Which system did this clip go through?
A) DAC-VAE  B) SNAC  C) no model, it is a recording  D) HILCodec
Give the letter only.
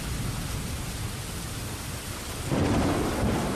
C